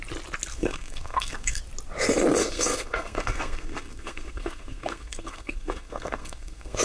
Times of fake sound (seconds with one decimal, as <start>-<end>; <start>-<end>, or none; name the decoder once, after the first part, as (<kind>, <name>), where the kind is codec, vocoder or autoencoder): 0.5-1.6 (codec, SNAC); 2.4-6.8